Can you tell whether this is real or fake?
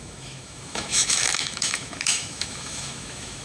fake